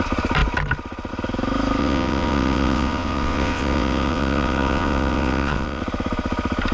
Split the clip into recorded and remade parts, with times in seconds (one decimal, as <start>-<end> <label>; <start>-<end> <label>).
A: 0.0-1.8 recorded; 1.8-5.8 remade; 5.8-6.7 recorded